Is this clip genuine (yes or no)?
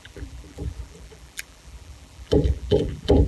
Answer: no